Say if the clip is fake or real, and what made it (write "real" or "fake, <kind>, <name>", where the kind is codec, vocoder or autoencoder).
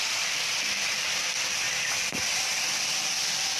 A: fake, vocoder, BigVGAN v2